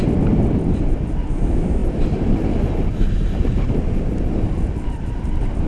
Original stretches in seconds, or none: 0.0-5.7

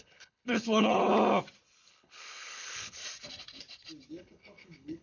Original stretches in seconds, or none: 1.1-1.9; 3.0-4.1

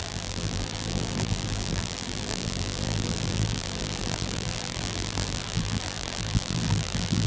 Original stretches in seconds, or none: none

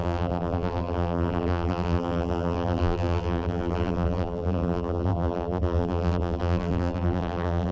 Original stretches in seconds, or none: none

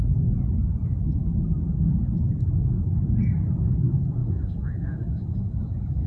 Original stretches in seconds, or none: 0.0-4.2

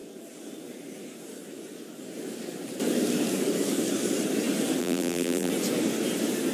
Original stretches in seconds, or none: 0.0-4.8; 5.5-6.5